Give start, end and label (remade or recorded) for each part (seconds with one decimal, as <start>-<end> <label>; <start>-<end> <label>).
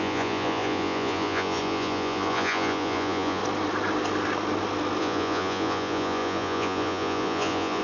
0.0-3.4 remade; 3.4-5.0 recorded; 5.0-7.8 remade